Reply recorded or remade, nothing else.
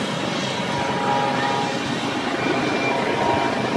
recorded